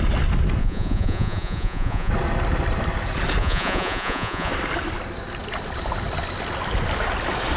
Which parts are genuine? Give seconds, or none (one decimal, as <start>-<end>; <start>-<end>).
0.0-0.6; 2.1-3.4; 4.5-7.6